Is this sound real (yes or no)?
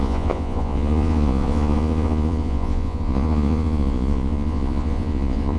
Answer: no